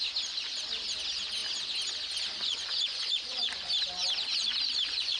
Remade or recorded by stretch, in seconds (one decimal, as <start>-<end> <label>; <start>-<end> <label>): 0.0-2.4 recorded; 2.4-3.5 remade; 3.5-4.3 recorded; 4.3-5.2 remade